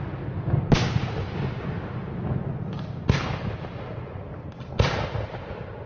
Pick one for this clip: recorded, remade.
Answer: recorded